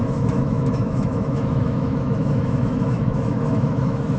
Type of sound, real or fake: fake